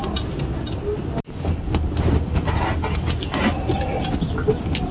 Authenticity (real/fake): real